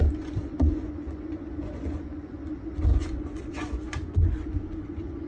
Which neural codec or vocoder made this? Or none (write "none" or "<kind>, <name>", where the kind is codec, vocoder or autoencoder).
vocoder, Vocos